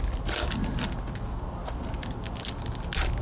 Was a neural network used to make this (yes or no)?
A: no